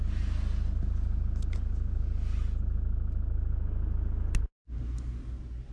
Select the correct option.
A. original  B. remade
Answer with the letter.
A